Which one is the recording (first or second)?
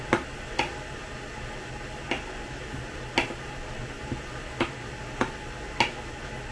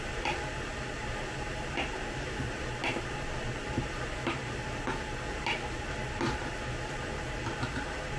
first